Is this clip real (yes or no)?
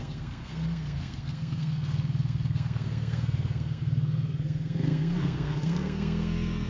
no